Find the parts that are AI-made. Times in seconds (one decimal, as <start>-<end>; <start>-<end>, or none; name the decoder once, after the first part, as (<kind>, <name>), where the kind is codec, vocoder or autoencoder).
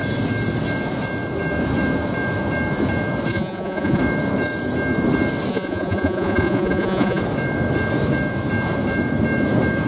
3.3-4.0 (vocoder, Vocos); 5.5-7.2